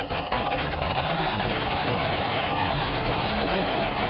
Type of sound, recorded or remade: remade